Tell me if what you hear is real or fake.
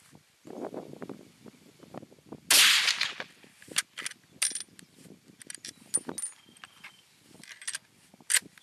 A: real